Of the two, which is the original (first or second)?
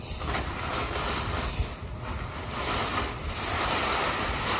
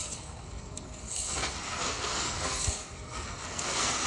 first